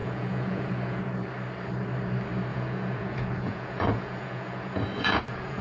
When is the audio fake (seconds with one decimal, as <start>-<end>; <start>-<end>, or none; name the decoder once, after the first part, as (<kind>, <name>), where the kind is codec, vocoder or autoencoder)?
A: 0.0-1.0 (vocoder, Vocos); 2.5-5.6